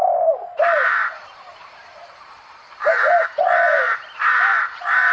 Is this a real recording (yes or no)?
no